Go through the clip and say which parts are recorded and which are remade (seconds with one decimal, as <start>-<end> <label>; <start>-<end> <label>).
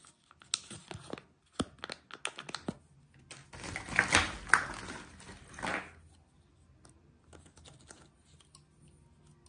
0.0-9.5 recorded